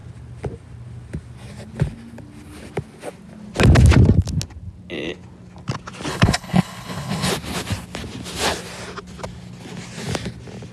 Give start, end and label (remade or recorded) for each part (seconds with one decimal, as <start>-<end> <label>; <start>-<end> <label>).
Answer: 0.0-6.1 recorded; 6.1-7.3 remade; 7.3-10.7 recorded

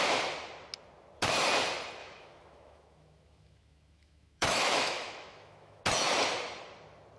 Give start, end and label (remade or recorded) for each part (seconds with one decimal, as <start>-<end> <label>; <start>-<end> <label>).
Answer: 0.0-2.0 recorded; 2.0-5.8 remade; 5.8-7.2 recorded

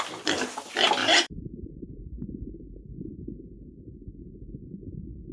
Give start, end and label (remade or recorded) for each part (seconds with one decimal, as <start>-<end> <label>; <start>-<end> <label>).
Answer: 0.0-1.0 recorded; 1.0-1.9 remade; 1.9-5.3 recorded

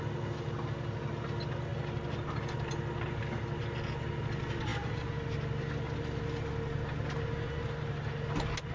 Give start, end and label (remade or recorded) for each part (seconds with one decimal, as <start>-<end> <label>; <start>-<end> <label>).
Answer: 0.0-8.7 recorded